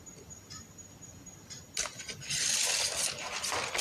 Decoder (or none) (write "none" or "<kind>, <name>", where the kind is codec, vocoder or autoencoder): none